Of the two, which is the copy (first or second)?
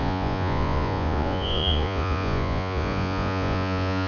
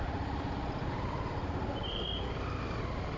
first